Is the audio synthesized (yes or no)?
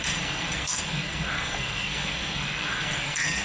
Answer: yes